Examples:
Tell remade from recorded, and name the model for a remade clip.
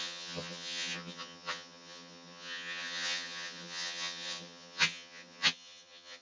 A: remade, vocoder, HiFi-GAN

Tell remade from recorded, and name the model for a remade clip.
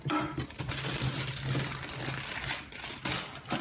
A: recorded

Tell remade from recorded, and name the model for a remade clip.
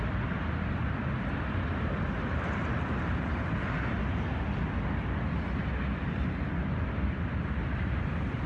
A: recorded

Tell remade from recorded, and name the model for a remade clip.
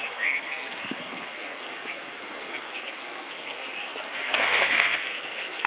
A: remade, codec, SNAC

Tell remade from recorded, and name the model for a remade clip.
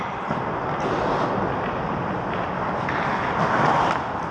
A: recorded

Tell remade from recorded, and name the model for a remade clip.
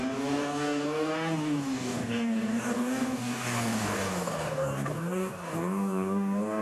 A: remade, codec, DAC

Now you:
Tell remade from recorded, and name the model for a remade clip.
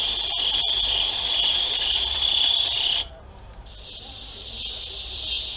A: remade, vocoder, BigVGAN v2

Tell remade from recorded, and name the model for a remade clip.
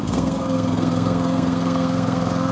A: remade, codec, SNAC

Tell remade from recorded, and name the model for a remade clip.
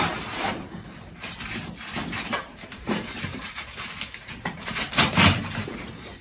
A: remade, vocoder, BigVGAN v2